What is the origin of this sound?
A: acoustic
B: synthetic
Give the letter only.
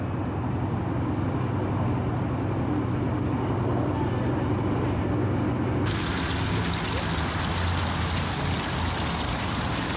A